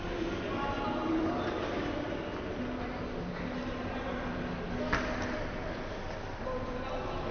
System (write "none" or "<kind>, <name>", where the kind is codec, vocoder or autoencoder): none